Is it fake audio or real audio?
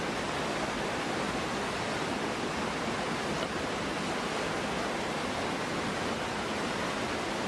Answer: real